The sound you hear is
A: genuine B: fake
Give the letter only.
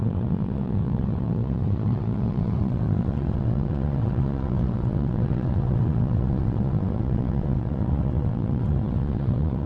B